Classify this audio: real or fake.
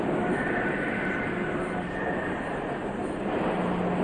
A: real